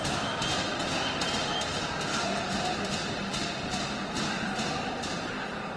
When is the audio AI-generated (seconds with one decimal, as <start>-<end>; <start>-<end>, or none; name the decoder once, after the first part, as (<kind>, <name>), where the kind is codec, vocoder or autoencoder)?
none